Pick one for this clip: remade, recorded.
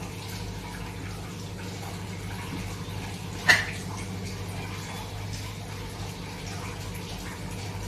recorded